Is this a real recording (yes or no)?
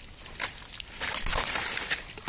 yes